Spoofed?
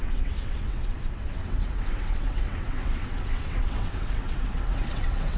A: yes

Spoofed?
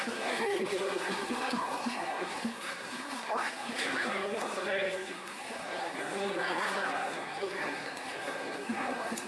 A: yes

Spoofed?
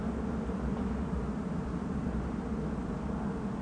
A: no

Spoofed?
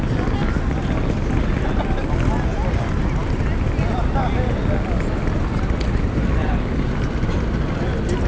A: no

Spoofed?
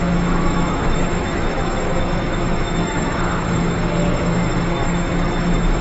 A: yes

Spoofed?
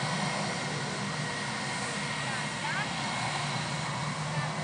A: no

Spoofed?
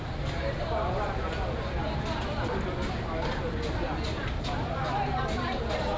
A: no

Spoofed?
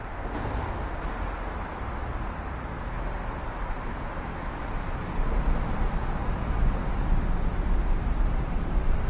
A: no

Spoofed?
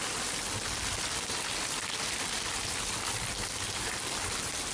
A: no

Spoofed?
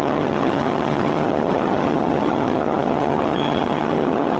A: yes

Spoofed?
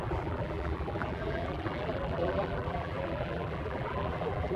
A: yes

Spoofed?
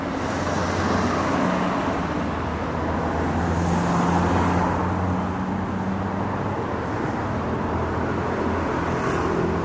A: no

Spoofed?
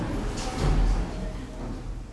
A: no